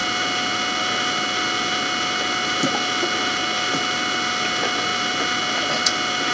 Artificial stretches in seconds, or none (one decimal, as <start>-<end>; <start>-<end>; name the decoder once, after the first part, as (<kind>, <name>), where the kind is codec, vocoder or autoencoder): none